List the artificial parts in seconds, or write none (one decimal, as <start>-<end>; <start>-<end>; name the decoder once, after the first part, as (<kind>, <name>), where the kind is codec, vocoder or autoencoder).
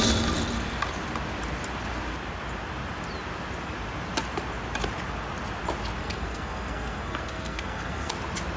6.0-8.1 (codec, SNAC)